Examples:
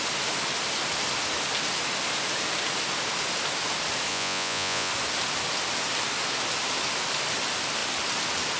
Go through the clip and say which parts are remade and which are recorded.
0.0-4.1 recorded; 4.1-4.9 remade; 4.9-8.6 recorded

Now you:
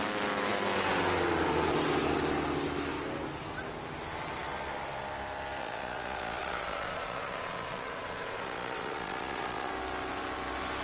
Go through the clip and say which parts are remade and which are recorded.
0.0-5.6 recorded; 5.6-9.7 remade; 9.7-10.8 recorded

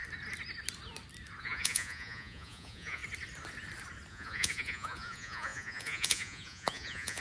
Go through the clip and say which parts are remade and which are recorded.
0.0-1.4 recorded; 1.4-3.0 remade; 3.0-4.1 recorded; 4.1-7.2 remade